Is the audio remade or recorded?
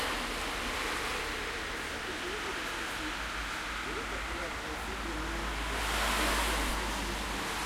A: recorded